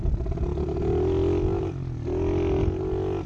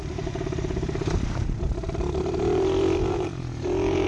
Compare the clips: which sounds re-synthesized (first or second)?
second